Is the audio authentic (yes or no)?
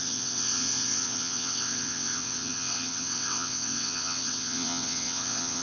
no